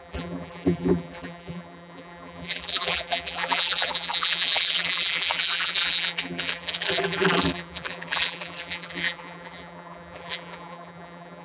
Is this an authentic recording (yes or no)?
no